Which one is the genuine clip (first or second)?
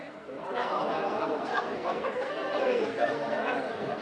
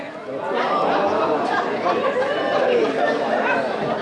second